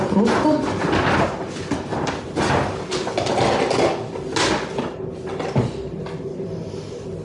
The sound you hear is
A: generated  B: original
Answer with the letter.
B